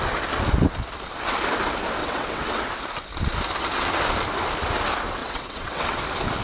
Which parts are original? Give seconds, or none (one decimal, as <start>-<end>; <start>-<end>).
0.0-2.0; 2.6-5.2; 6.0-6.4